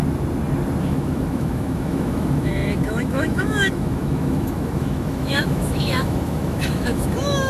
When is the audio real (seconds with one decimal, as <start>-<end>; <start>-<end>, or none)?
0.0-0.8